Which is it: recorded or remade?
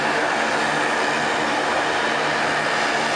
recorded